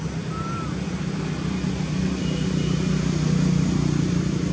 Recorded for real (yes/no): yes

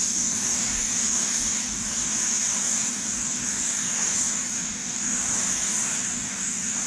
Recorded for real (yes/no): no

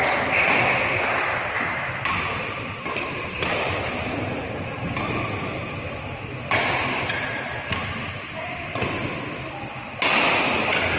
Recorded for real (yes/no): yes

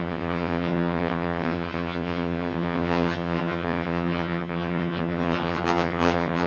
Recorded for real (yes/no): no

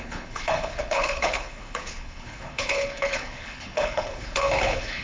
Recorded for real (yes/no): no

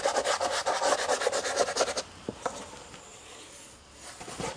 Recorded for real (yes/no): yes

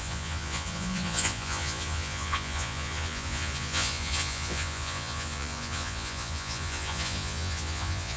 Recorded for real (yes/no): no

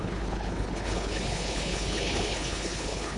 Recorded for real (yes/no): no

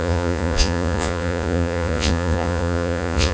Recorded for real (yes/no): no